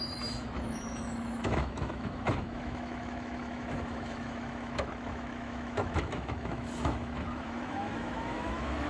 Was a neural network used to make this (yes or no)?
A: yes